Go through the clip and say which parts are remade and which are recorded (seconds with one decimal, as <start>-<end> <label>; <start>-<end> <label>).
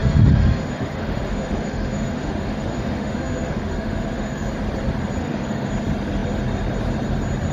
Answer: 0.0-4.5 remade; 4.5-5.2 recorded; 5.2-5.7 remade; 5.7-7.5 recorded